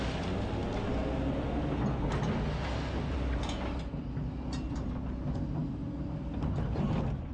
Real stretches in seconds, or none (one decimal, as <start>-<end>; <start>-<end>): 0.0-7.3